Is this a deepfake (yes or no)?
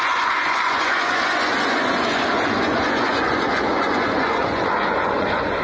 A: yes